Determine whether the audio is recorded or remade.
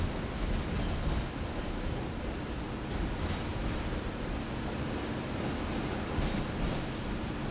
recorded